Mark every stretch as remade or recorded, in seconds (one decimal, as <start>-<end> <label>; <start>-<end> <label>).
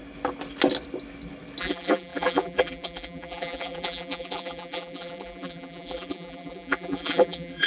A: 0.0-1.6 recorded; 1.6-7.7 remade